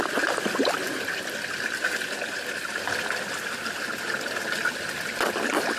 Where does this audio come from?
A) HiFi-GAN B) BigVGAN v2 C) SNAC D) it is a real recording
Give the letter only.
D